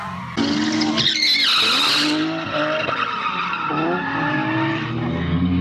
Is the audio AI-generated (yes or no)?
no